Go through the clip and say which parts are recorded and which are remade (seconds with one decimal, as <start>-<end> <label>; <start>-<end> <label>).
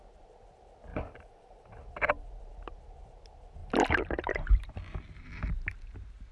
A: 0.0-0.9 recorded; 0.9-1.8 remade; 1.8-3.6 recorded; 3.6-4.3 remade; 4.3-6.3 recorded